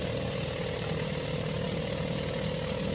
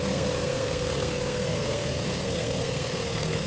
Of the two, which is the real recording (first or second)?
first